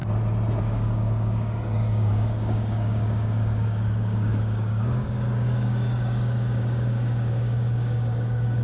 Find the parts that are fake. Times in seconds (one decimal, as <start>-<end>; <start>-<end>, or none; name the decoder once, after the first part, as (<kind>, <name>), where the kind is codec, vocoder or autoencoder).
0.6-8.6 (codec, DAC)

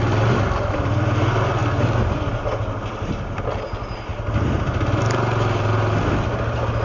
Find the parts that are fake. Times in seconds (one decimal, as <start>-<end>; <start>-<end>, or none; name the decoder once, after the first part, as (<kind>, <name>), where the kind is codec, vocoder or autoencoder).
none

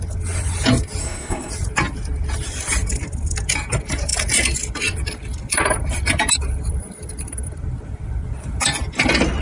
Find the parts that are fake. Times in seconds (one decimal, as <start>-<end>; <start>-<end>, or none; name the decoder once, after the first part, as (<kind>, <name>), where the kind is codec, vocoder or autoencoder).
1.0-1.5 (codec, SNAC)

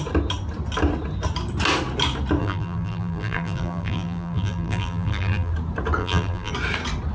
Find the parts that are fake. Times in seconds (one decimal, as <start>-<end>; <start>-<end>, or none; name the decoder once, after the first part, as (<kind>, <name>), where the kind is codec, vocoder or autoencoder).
2.4-5.5 (vocoder, BigVGAN v2); 6.0-6.5

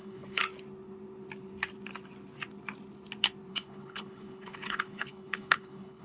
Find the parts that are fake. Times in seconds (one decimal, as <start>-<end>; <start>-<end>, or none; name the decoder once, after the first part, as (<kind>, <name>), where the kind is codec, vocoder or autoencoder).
0.0-0.4 (codec, HILCodec); 3.5-6.0

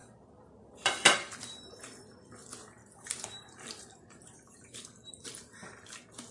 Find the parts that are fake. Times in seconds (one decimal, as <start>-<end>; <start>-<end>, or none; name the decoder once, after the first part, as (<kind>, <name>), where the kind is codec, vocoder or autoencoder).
2.8-5.1 (vocoder, BigVGAN v2)

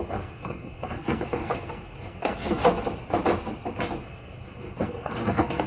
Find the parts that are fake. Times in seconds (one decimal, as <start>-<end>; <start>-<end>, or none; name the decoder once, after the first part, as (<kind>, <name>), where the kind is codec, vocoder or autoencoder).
0.0-2.6 (codec, SNAC); 4.0-5.7

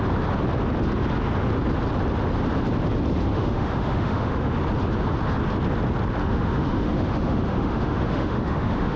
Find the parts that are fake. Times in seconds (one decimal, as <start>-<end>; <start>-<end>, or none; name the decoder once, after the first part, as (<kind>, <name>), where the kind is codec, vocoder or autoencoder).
3.3-4.5 (autoencoder, DAC-VAE); 6.2-9.0